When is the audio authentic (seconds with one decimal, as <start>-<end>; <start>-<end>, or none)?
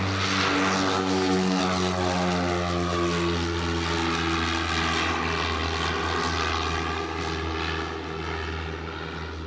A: 0.0-0.9; 1.6-9.5